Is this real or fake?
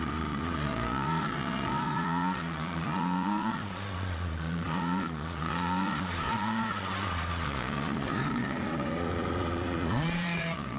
fake